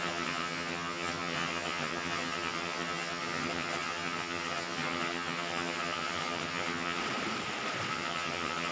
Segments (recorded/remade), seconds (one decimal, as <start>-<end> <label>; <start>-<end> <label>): 0.0-7.0 remade; 7.0-7.9 recorded; 7.9-8.7 remade